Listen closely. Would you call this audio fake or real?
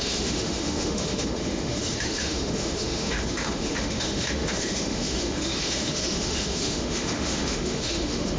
fake